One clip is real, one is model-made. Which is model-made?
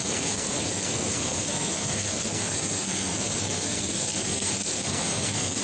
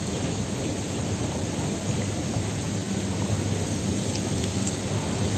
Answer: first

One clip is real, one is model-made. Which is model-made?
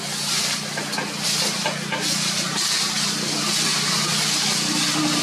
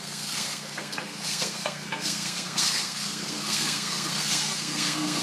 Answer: second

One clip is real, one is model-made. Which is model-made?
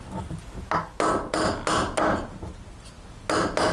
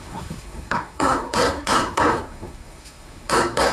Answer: second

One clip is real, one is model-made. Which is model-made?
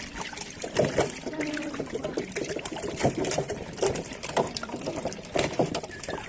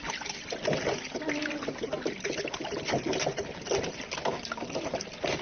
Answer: first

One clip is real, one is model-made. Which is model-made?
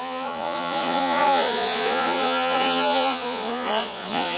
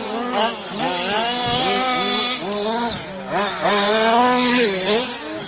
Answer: first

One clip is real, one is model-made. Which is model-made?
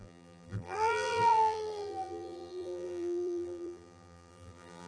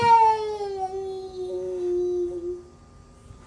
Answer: first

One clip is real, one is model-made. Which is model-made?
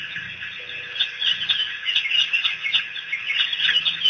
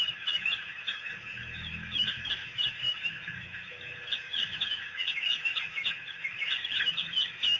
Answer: second